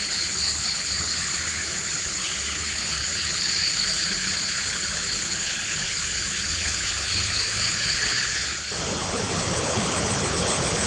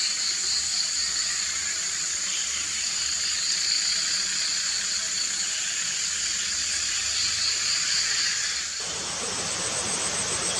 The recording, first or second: second